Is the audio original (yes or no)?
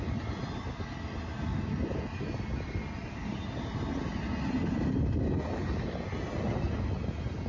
yes